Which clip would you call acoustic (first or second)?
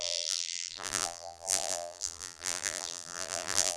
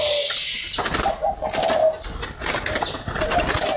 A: second